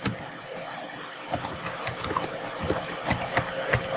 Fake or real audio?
real